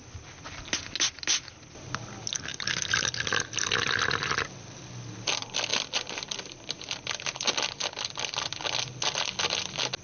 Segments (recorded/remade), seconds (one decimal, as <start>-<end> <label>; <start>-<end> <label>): 0.0-10.0 recorded